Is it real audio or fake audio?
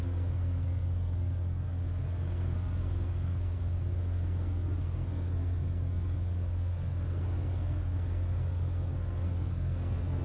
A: fake